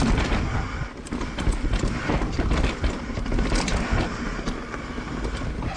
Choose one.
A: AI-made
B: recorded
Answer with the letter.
B